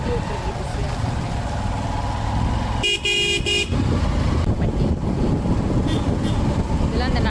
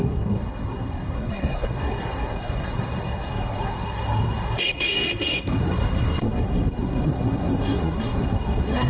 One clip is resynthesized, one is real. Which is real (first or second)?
first